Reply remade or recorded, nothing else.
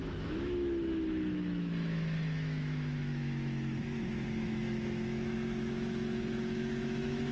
remade